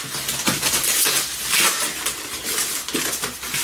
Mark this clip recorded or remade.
recorded